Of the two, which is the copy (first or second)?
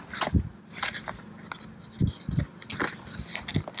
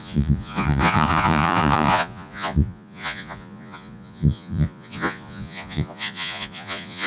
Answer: second